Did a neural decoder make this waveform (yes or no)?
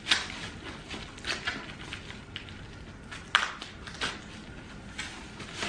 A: no